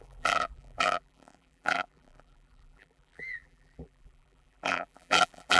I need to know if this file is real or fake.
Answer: fake